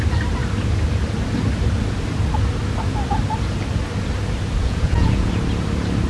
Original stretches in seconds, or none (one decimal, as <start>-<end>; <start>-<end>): 0.0-4.6; 5.3-6.1